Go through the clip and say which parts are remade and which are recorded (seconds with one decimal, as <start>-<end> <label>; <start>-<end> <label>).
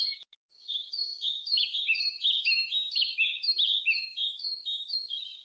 0.0-5.4 remade